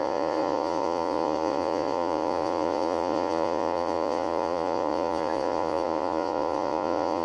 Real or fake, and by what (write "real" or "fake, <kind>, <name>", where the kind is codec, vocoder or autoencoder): fake, vocoder, Vocos